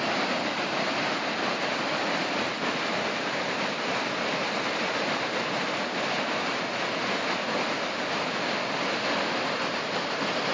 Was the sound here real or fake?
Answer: real